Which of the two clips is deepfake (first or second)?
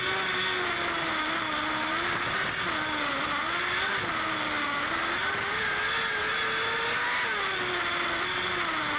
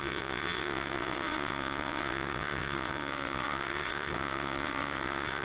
second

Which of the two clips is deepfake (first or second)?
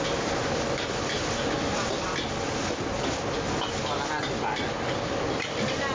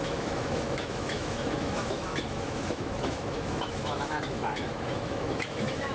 second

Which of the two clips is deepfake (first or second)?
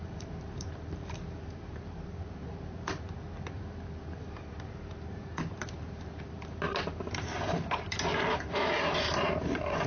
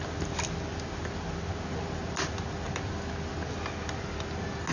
first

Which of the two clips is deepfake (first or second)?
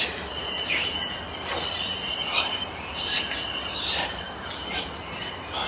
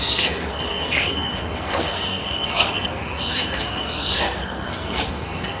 second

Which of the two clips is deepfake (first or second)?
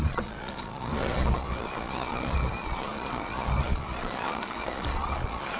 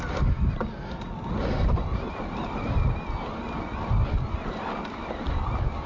first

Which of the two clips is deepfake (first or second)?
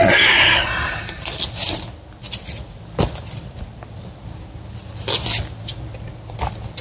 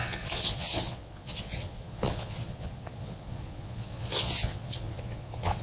second